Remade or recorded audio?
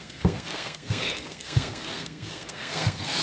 remade